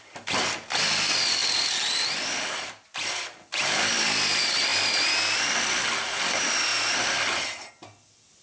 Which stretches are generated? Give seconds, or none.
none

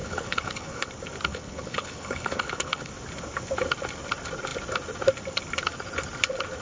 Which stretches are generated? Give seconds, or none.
0.0-0.9 (codec, HILCodec); 1.3-2.9

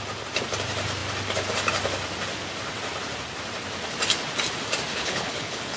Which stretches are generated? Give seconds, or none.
4.9-5.8 (codec, HILCodec)

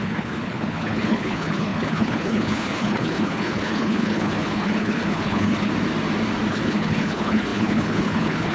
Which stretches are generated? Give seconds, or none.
0.0-5.7 (codec, HILCodec); 6.5-8.5

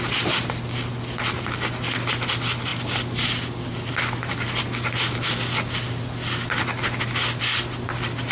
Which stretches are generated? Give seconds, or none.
none

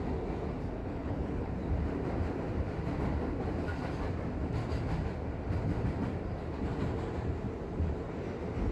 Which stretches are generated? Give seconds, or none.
0.8-1.5 (codec, HILCodec)